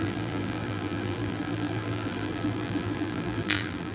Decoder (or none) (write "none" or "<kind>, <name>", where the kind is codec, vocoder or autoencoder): vocoder, BigVGAN v2